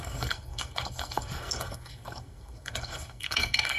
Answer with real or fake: fake